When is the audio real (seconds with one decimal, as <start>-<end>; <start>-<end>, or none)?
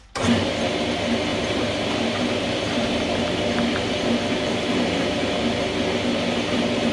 0.0-1.3; 5.4-6.1